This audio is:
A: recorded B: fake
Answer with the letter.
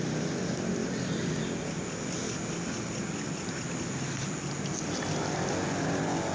A